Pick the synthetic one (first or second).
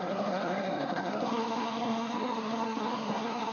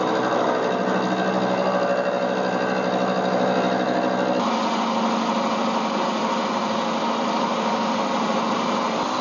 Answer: first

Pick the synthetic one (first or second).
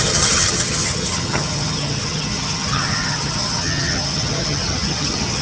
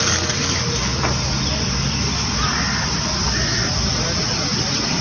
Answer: first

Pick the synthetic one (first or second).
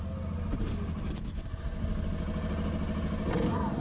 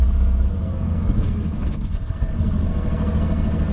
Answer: second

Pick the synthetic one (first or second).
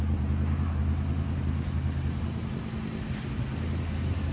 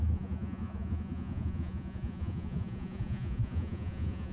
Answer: second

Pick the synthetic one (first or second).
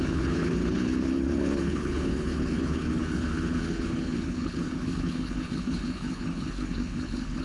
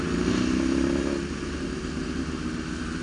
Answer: first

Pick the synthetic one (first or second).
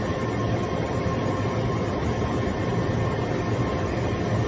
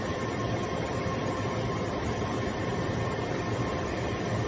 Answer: second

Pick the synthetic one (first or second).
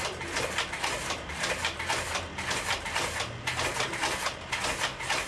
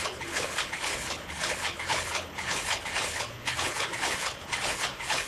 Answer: second